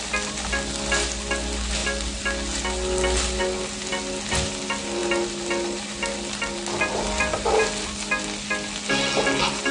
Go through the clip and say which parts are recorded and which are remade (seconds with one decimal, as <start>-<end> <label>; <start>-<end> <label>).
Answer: 0.0-9.7 recorded